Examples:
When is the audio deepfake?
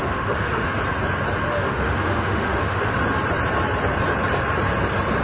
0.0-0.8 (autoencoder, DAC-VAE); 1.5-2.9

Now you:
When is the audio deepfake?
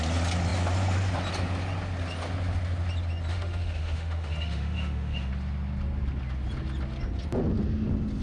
3.3-5.3 (autoencoder, DAC-VAE)